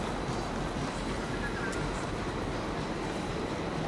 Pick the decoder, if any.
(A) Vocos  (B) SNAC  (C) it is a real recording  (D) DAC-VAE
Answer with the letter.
C